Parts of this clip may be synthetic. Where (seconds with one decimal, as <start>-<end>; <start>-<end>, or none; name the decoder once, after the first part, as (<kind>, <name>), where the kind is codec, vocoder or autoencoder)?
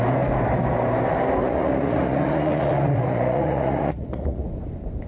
1.4-4.5 (vocoder, Vocos)